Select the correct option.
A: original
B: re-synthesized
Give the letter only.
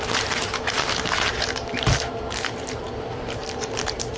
B